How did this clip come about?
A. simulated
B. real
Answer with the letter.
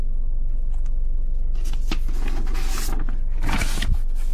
B